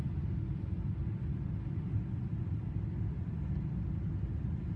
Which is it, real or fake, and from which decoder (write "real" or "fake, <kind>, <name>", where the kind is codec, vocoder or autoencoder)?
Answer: real